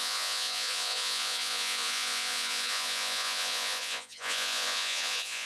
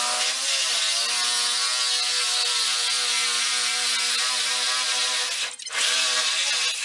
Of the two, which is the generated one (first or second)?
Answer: first